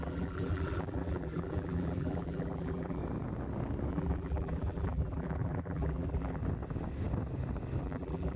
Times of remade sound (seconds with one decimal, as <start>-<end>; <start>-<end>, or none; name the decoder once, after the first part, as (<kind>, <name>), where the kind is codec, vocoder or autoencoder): 0.0-3.0 (vocoder, BigVGAN v2); 3.9-6.4; 7.8-8.4